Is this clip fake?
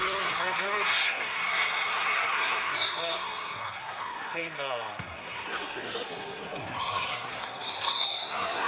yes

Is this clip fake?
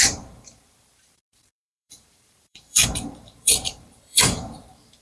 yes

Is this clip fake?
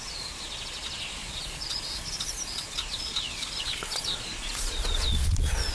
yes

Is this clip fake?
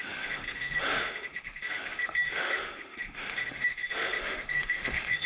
yes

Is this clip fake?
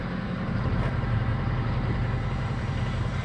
yes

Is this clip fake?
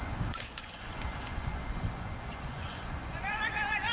yes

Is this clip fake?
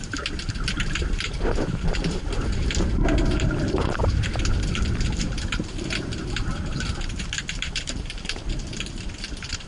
yes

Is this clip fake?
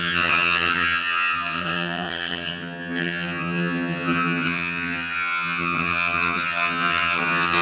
yes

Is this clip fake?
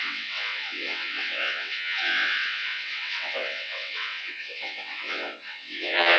yes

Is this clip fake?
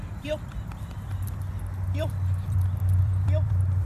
yes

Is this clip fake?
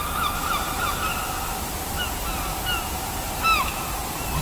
no